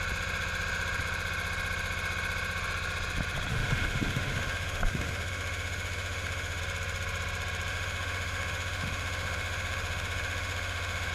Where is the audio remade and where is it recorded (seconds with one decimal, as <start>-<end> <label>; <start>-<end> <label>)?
0.0-3.5 recorded; 3.5-6.6 remade; 6.6-7.7 recorded; 7.7-11.1 remade